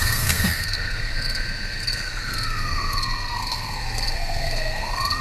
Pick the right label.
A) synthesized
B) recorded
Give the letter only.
A